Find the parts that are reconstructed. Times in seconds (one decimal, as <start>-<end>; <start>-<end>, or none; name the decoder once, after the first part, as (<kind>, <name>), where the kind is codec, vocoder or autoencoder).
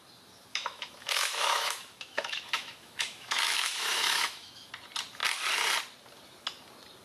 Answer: 0.5-4.7 (autoencoder, DAC-VAE)